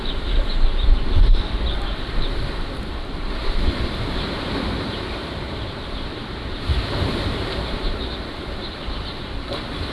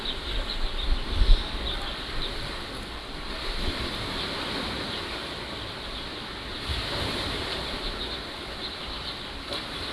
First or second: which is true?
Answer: second